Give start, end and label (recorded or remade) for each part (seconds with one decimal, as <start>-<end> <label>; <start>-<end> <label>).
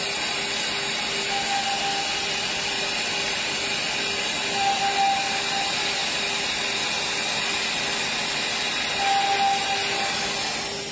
0.0-10.9 recorded